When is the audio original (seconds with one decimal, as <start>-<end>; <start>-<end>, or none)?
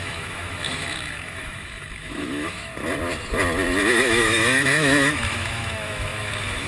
2.7-3.8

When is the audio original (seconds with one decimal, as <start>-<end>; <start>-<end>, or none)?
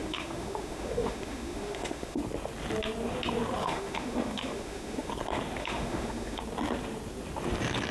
2.2-3.6; 5.1-5.6; 6.4-7.9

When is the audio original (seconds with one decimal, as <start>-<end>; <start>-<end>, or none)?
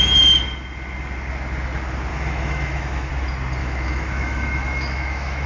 0.0-2.1; 3.1-3.6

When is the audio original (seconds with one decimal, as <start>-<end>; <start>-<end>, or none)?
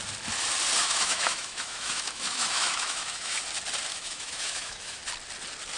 0.0-0.8; 3.4-3.9; 5.0-5.8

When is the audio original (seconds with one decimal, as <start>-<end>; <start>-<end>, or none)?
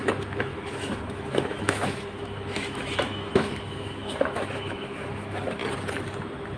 5.6-6.6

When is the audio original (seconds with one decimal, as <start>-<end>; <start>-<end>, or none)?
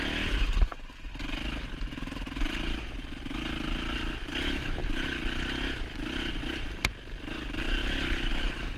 0.0-8.8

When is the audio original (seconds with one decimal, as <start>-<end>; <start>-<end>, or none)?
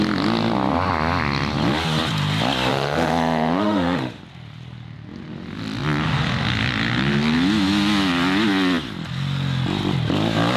0.0-2.7; 4.2-10.6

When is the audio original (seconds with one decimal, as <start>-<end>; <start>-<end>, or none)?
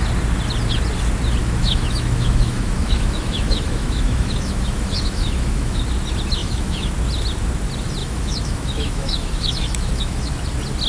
0.0-1.4; 5.8-6.4; 6.9-8.0; 10.4-10.9